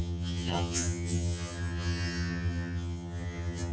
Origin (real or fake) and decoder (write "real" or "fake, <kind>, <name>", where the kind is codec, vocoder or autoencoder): fake, vocoder, HiFi-GAN